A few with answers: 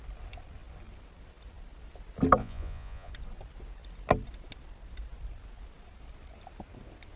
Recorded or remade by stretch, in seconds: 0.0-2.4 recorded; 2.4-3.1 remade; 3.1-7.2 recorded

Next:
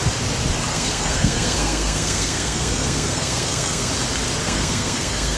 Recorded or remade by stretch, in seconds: 0.0-0.7 recorded; 0.7-3.9 remade; 3.9-4.4 recorded; 4.4-5.4 remade